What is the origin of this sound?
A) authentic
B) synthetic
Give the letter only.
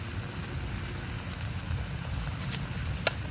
A